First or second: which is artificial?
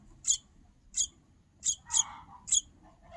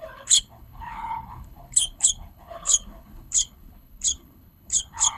second